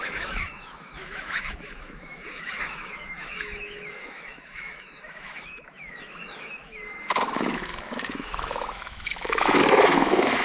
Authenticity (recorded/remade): remade